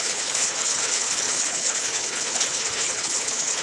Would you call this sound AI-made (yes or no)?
yes